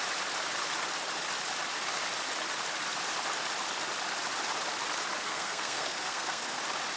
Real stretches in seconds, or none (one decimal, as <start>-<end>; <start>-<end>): 0.0-5.2; 6.6-7.0